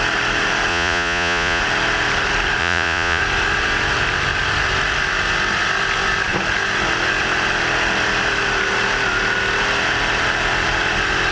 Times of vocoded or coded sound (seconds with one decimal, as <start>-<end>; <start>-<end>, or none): 0.7-1.6; 2.6-3.2